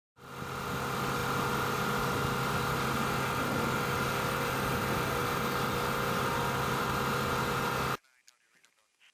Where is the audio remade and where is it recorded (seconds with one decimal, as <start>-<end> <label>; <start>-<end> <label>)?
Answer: 0.0-9.1 recorded